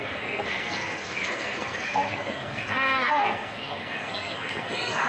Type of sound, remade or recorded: remade